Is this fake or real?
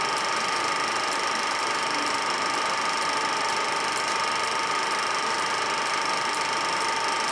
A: real